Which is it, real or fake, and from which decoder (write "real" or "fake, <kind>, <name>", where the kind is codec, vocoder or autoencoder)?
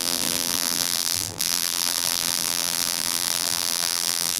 fake, vocoder, BigVGAN v2